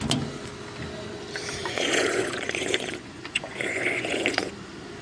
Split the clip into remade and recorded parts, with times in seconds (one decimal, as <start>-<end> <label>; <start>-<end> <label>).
0.0-1.6 recorded; 1.6-4.5 remade; 4.5-5.0 recorded